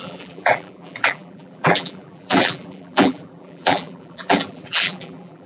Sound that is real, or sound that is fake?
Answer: fake